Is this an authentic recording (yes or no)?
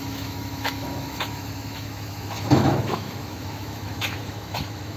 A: no